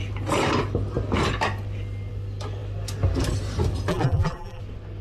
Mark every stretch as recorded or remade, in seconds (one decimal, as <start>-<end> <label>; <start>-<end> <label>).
0.0-3.9 recorded; 3.9-4.6 remade; 4.6-5.0 recorded